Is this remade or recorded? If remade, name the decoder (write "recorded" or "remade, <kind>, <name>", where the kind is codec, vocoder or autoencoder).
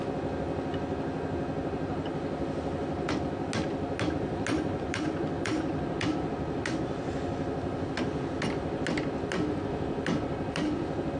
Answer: recorded